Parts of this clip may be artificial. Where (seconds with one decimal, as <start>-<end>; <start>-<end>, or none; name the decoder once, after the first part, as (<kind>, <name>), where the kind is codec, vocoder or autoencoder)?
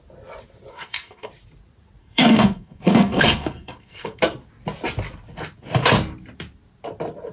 0.7-1.3 (codec, SNAC); 2.0-4.2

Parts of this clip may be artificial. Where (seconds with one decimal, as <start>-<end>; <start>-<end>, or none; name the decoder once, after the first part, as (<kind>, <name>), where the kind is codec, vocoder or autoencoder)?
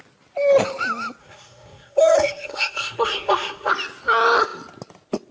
1.2-3.7 (codec, SNAC)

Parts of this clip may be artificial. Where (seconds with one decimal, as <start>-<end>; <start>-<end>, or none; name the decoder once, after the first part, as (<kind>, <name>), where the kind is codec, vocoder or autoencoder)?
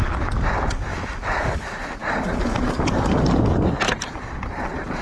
none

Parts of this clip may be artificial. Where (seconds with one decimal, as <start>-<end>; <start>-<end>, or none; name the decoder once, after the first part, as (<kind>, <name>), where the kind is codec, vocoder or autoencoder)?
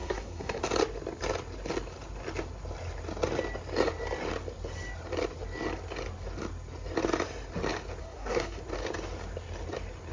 0.0-0.6 (codec, SNAC); 8.0-8.6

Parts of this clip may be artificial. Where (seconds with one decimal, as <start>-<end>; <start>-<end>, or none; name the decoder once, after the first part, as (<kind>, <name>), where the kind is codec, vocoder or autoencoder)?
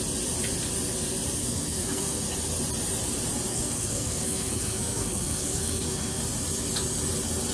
1.4-2.2 (codec, SNAC); 3.5-6.2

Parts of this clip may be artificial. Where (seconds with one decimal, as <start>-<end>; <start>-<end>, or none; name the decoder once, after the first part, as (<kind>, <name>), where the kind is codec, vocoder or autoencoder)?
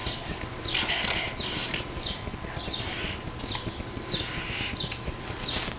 none